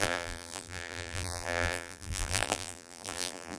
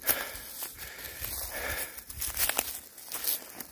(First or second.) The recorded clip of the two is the second